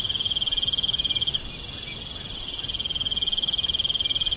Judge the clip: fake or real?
real